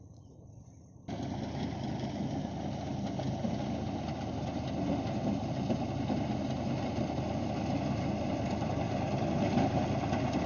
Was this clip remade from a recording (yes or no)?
no